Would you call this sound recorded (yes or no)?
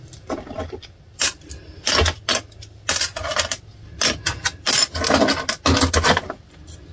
yes